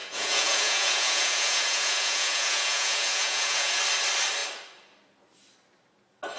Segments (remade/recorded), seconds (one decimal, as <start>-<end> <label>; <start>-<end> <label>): 0.0-3.8 remade; 3.8-6.4 recorded